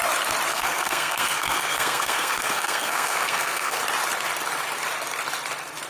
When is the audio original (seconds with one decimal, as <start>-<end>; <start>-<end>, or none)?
0.0-0.5; 3.8-5.9